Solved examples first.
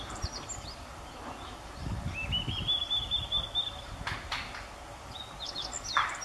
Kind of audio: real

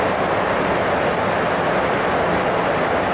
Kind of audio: real